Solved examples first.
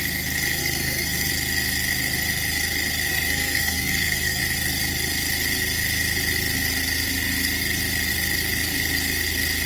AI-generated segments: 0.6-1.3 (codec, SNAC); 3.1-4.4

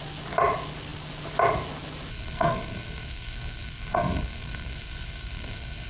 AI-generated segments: 2.1-5.9 (codec, SNAC)

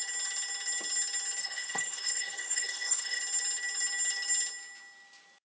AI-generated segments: 1.4-3.2 (codec, SNAC)

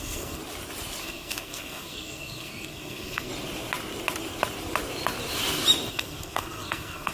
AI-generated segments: 0.0-0.4 (codec, SNAC); 1.0-3.3; 5.9-7.1

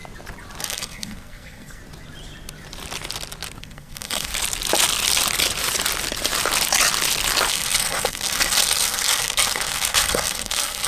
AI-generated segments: 0.6-1.8 (codec, SNAC); 3.6-4.3; 7.5-10.9